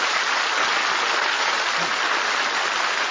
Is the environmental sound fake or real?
real